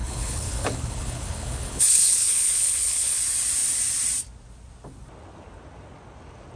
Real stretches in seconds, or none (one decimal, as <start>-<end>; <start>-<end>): 3.2-6.6